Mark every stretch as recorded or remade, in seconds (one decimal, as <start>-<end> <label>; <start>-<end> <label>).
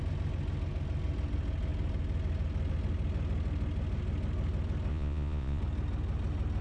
0.0-4.9 recorded; 4.9-5.6 remade; 5.6-6.6 recorded